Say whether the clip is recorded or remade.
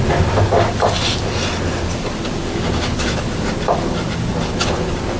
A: recorded